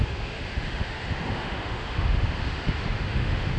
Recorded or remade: remade